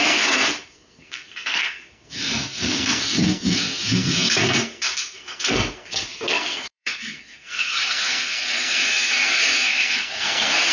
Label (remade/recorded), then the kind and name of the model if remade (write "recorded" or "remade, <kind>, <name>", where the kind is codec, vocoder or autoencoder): remade, codec, SNAC